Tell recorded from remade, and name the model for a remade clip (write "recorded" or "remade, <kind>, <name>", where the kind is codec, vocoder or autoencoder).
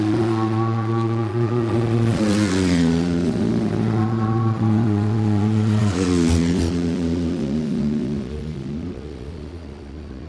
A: remade, vocoder, Vocos